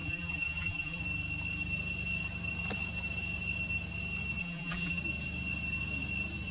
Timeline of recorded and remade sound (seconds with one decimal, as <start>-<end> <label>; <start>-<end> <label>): 0.0-1.0 remade; 1.0-4.4 recorded; 4.4-5.0 remade; 5.0-6.5 recorded